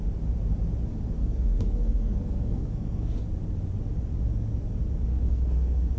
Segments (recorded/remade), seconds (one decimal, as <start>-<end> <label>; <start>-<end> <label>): 0.0-1.2 recorded; 1.2-3.2 remade; 3.2-5.1 recorded; 5.1-6.0 remade